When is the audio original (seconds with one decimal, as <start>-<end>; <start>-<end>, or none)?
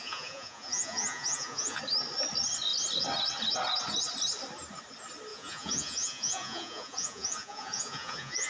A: 1.8-5.3